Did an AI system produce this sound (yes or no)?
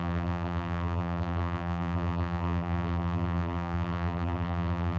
yes